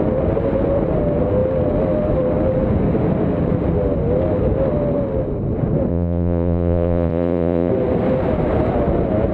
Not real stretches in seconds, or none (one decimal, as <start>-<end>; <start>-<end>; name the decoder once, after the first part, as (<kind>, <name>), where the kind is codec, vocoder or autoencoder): 5.9-7.7 (vocoder, Vocos)